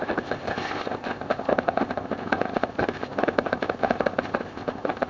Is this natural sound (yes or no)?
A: no